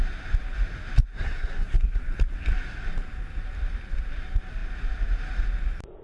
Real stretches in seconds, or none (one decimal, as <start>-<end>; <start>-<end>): 0.0-1.1; 2.0-6.0